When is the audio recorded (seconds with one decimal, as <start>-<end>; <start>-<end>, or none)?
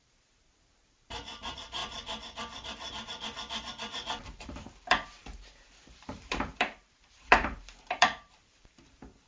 none